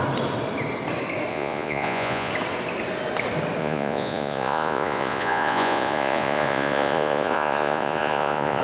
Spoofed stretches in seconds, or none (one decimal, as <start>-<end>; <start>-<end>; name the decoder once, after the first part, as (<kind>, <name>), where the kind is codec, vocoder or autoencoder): 1.3-2.3 (vocoder, Vocos); 3.6-8.6

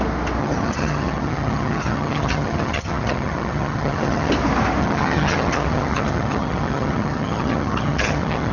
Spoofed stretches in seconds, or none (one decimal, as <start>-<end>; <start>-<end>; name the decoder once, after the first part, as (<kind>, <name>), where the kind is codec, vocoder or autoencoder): 0.4-4.3 (vocoder, HiFi-GAN); 4.8-8.5

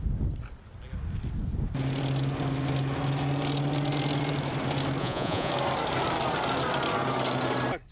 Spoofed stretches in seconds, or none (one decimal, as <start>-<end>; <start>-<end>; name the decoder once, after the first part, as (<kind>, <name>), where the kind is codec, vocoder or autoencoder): 5.0-5.5 (vocoder, Vocos)

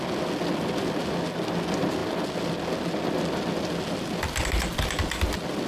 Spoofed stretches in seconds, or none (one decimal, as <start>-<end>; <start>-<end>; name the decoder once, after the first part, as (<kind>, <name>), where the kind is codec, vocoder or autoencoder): none

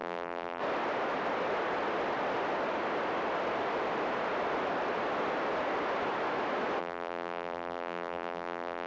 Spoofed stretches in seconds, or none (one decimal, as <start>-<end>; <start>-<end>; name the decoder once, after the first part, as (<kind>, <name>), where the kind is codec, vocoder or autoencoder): 0.0-0.6 (vocoder, BigVGAN v2); 6.8-8.9

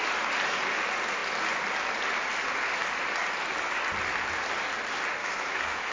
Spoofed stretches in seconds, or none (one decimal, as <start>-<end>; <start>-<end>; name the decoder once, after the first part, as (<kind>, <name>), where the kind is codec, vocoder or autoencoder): 5.2-5.9 (autoencoder, DAC-VAE)

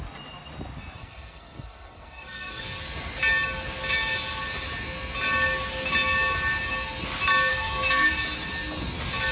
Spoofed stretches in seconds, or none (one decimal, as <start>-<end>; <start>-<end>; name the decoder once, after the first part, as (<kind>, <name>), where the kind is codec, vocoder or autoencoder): 1.0-2.6 (codec, SNAC); 7.5-8.1